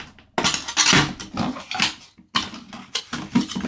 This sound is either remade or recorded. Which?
recorded